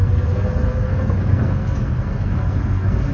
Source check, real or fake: fake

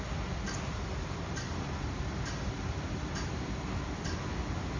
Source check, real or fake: real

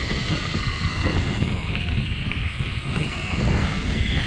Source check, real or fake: fake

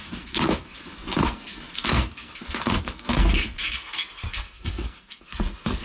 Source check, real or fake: fake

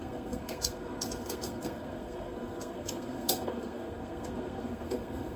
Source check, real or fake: fake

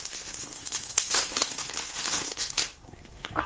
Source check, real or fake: fake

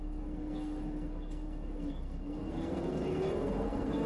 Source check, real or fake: fake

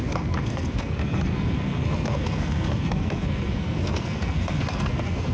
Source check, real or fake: fake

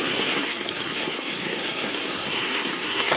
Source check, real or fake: fake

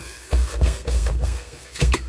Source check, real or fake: fake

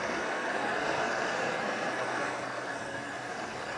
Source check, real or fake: fake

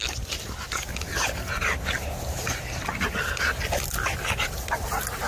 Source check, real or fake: real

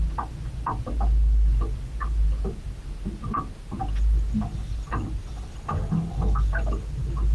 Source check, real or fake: real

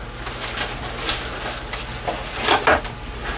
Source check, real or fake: real